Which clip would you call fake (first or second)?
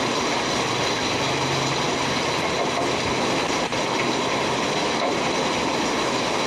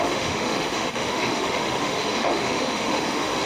second